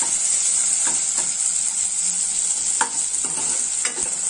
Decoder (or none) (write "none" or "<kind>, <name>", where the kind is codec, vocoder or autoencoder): none